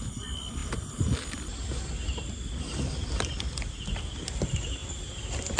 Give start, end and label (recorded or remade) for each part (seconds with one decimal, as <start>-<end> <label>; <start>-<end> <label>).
0.0-5.6 recorded